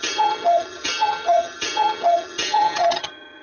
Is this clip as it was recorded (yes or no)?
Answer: no